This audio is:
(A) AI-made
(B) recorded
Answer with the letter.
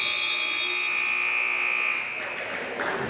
B